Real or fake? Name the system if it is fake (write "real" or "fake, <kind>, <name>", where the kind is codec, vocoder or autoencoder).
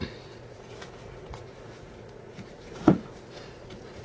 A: fake, vocoder, Vocos